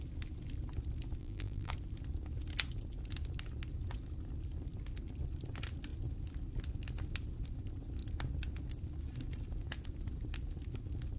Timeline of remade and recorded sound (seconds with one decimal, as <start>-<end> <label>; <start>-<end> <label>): 0.0-1.2 recorded; 1.2-1.7 remade; 1.7-11.2 recorded